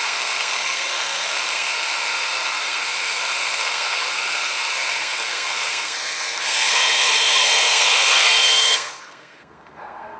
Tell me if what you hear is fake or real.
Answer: fake